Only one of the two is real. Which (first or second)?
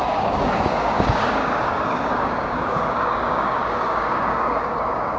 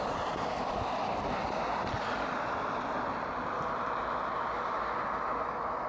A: second